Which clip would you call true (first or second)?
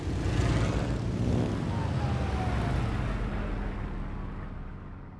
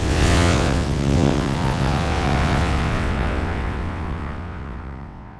first